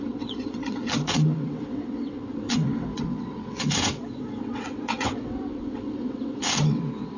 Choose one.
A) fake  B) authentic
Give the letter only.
A